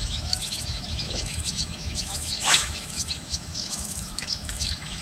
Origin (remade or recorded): remade